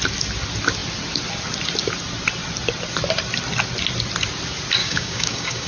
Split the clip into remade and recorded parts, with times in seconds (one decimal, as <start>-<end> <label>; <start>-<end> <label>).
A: 0.0-4.8 recorded; 4.8-5.7 remade

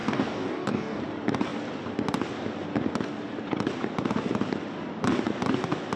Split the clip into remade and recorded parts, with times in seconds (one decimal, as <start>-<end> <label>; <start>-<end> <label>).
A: 0.0-1.0 remade; 1.0-6.0 recorded

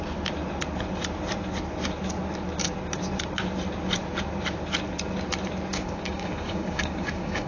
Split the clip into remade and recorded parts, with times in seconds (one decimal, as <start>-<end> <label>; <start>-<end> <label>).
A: 0.0-5.7 recorded; 5.7-7.5 remade

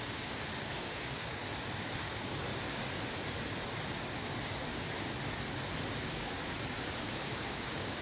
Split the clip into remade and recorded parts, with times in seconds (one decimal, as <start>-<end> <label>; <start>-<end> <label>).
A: 0.0-1.4 remade; 1.4-1.9 recorded; 1.9-2.5 remade; 2.5-6.1 recorded; 6.1-8.0 remade

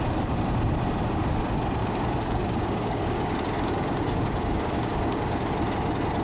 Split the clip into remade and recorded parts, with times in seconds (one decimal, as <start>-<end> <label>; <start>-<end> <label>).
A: 0.0-1.8 recorded; 1.8-5.5 remade; 5.5-6.2 recorded